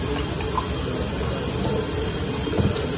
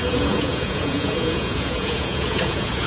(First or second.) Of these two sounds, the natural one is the first